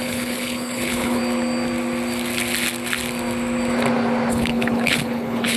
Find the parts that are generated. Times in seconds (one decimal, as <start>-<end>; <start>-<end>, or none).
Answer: 0.0-1.2; 4.3-5.6